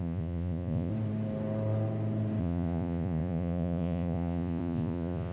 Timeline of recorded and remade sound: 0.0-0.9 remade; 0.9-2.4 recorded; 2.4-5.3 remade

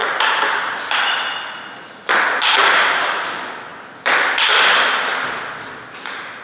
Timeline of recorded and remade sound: 0.0-6.4 recorded